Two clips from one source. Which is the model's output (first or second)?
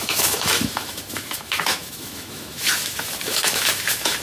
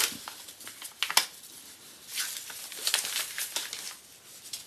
first